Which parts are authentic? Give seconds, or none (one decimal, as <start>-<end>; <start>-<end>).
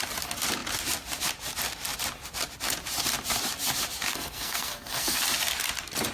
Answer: 0.0-4.1; 5.2-6.1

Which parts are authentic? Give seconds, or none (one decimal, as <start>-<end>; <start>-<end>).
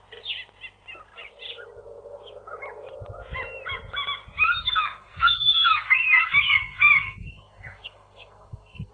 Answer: 0.0-4.6